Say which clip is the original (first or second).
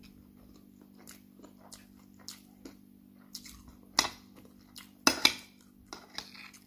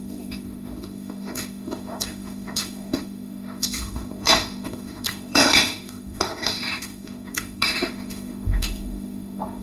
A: first